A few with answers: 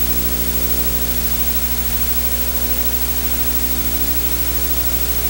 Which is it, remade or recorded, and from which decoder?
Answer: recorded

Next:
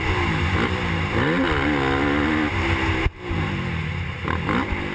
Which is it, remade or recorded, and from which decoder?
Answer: recorded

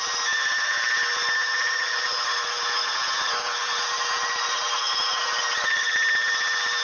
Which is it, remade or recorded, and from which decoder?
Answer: recorded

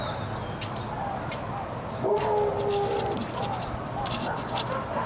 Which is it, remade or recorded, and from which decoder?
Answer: recorded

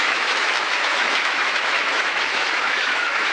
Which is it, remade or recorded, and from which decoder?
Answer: remade, autoencoder, DAC-VAE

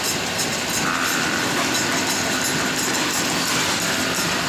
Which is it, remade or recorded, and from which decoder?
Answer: recorded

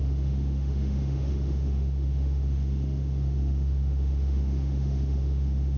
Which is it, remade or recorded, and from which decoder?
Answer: remade, autoencoder, DAC-VAE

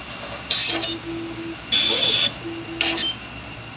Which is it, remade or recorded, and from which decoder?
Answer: recorded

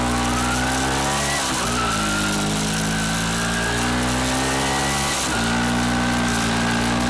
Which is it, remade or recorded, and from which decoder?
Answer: recorded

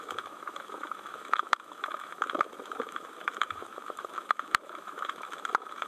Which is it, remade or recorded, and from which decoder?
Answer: remade, autoencoder, DAC-VAE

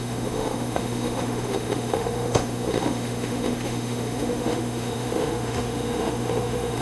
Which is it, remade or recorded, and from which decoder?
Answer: remade, autoencoder, DAC-VAE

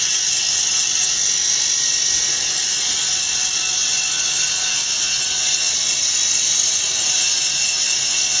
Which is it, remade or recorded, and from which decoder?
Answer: recorded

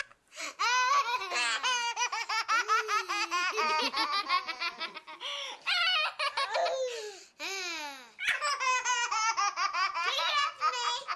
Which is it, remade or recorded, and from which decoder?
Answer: recorded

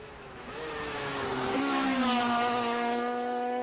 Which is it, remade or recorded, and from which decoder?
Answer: remade, autoencoder, DAC-VAE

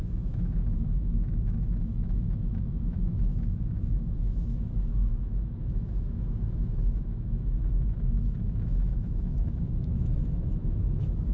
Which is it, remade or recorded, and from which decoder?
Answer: remade, autoencoder, DAC-VAE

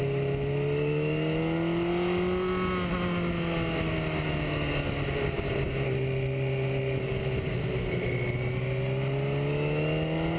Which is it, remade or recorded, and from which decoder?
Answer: recorded